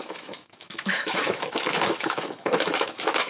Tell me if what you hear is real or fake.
fake